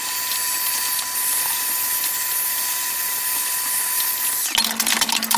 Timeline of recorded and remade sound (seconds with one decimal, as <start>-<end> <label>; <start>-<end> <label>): 0.0-5.4 recorded